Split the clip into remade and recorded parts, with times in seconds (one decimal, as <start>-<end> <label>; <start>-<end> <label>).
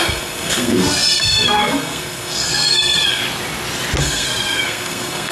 0.0-3.2 remade; 3.2-4.0 recorded; 4.0-5.3 remade